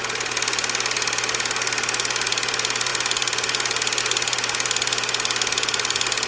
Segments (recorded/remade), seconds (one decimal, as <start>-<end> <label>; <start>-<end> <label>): 0.0-6.3 recorded